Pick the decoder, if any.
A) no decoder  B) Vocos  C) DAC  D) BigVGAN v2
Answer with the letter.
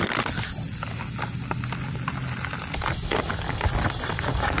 A